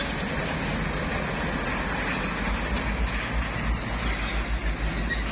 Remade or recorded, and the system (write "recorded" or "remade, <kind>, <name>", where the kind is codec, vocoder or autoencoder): recorded